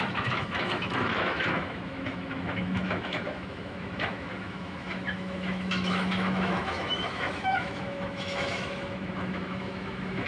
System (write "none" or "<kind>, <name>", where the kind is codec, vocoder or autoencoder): autoencoder, DAC-VAE